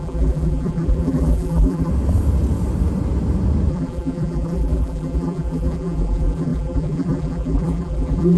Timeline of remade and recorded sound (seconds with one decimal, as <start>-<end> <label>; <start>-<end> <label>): 0.0-1.9 remade; 1.9-3.7 recorded; 3.7-8.4 remade